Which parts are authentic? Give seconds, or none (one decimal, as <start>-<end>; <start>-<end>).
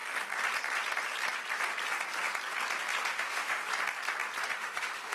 0.0-3.1; 3.6-4.5